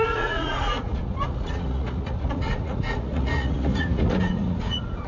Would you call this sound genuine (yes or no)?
no